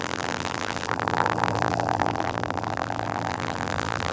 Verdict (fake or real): fake